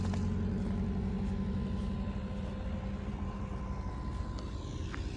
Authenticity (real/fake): real